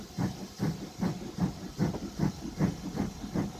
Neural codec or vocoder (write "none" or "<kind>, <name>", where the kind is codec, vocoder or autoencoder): none